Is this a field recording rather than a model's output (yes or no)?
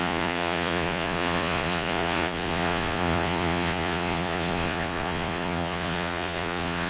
no